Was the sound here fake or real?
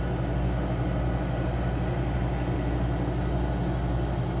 real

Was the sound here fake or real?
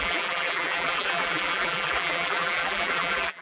fake